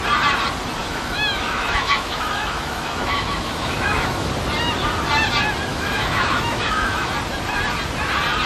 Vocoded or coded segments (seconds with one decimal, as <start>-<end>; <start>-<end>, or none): 0.8-4.3; 5.7-7.1